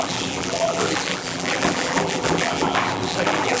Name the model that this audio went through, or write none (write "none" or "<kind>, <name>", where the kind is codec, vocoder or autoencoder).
vocoder, BigVGAN v2